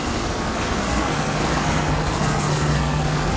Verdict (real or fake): fake